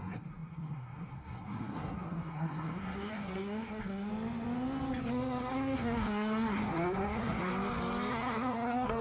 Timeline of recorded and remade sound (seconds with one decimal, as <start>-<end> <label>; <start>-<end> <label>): 0.0-4.1 remade; 4.1-5.1 recorded; 5.1-7.5 remade; 7.5-8.1 recorded; 8.1-9.0 remade